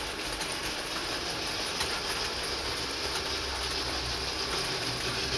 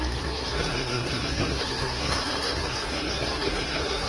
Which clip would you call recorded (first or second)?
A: first